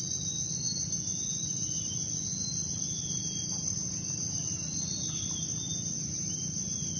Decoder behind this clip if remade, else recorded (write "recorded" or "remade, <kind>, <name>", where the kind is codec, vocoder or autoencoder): recorded